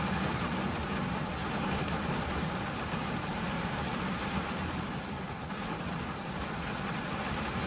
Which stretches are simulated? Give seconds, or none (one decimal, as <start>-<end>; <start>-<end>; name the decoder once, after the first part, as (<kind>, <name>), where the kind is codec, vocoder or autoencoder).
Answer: 1.4-4.2 (vocoder, BigVGAN v2)